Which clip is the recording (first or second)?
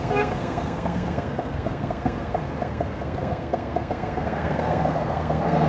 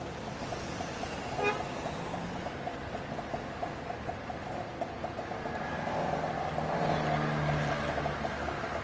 second